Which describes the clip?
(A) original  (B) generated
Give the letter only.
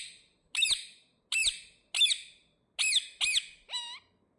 A